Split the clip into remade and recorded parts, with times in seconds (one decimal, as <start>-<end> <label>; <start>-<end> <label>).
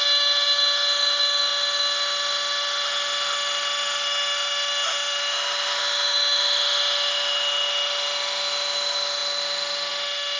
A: 0.0-10.4 remade